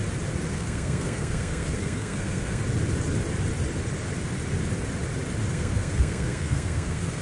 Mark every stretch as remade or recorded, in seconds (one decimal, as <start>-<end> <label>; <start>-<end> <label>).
0.0-0.5 recorded; 0.5-2.6 remade; 2.6-5.5 recorded; 5.5-7.2 remade